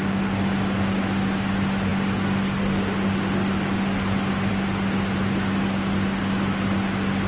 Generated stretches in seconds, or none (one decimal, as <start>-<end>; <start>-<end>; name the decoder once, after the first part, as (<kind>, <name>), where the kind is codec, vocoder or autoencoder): none